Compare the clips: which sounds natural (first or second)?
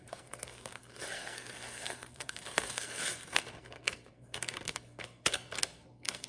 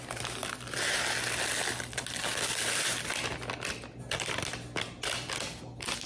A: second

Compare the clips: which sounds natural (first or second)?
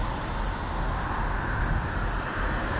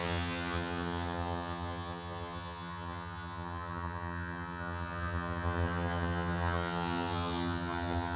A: first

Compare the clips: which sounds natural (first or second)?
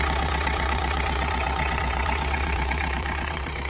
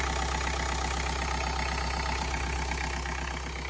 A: second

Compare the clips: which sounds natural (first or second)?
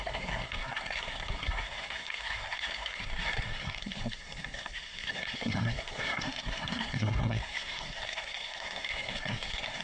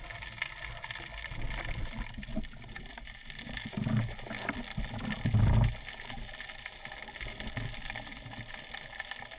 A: second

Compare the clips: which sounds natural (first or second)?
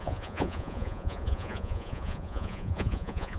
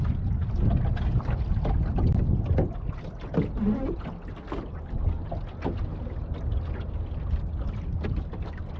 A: second